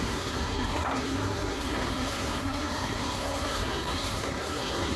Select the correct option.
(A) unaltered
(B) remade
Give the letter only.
B